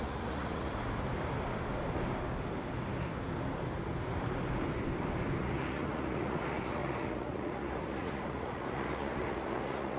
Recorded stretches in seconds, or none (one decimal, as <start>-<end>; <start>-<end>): 0.7-5.4